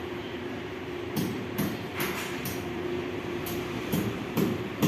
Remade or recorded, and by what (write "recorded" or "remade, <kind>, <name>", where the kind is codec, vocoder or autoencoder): remade, vocoder, BigVGAN v2